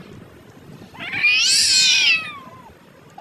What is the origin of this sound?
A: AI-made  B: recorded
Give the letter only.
B